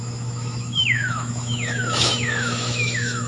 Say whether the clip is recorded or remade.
remade